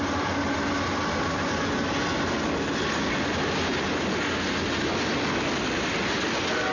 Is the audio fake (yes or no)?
no